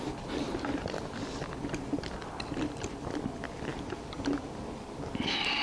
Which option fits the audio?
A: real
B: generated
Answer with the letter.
A